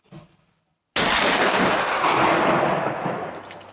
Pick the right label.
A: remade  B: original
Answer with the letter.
B